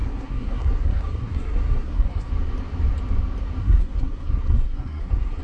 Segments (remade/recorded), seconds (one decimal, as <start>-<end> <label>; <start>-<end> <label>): 0.0-2.3 remade; 2.3-3.6 recorded; 3.6-5.4 remade

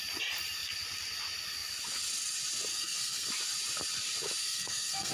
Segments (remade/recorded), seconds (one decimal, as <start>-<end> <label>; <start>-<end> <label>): 0.0-2.7 recorded; 2.7-3.3 remade; 3.3-4.4 recorded; 4.4-5.1 remade

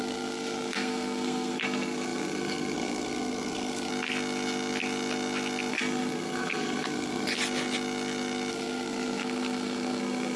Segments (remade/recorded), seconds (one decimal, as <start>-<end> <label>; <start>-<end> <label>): 0.0-3.9 remade; 3.9-5.7 recorded; 5.7-7.3 remade; 7.3-8.5 recorded; 8.5-10.4 remade